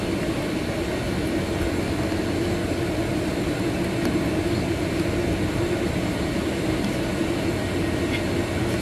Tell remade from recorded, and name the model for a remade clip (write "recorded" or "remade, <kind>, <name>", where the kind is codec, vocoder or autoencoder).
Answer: recorded